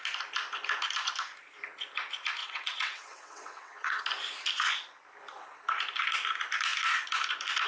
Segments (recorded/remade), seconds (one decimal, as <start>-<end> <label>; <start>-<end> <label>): 0.0-2.4 recorded; 2.4-4.0 remade; 4.0-7.7 recorded